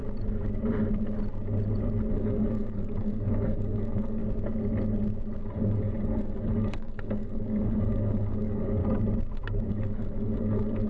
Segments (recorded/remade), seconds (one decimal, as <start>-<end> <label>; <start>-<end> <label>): 0.0-2.1 recorded; 2.1-4.2 remade; 4.2-5.4 recorded; 5.4-8.8 remade; 8.8-9.7 recorded; 9.7-10.9 remade